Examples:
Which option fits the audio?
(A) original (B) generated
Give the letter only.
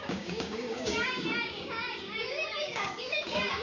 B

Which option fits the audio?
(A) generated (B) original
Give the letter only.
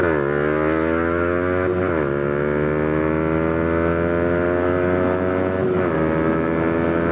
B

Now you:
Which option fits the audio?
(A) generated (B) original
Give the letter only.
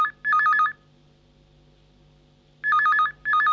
B